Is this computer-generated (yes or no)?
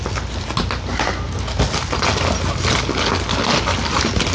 no